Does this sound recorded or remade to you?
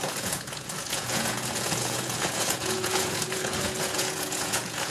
remade